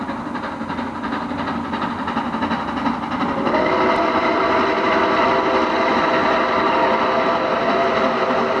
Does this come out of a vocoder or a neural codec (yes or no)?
no